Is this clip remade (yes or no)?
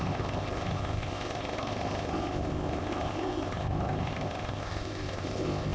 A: yes